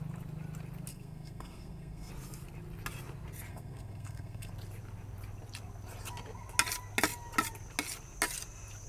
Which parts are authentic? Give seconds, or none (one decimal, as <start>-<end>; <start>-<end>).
0.0-0.9; 2.1-3.5; 4.5-8.9